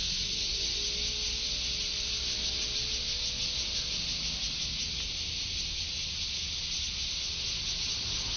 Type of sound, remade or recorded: recorded